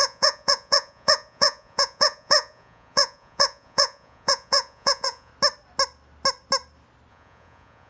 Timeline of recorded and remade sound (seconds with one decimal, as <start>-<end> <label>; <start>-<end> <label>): 0.0-5.3 remade; 5.3-7.1 recorded; 7.1-7.9 remade